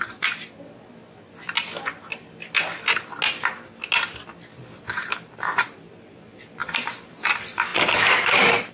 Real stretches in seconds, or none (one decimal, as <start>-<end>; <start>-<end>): 1.0-4.6